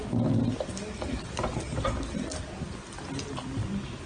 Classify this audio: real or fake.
real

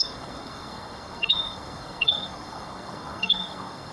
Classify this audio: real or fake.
fake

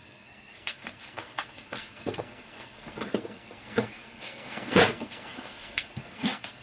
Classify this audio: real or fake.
fake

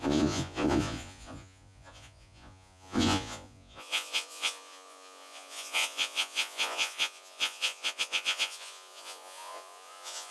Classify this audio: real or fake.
fake